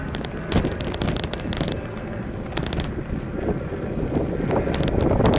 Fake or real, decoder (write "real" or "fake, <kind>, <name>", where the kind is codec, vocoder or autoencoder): real